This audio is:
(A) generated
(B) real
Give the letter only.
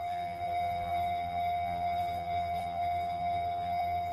A